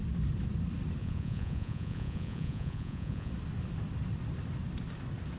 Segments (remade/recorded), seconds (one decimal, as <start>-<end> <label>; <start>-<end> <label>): 0.0-1.0 recorded; 1.0-3.3 remade; 3.3-5.4 recorded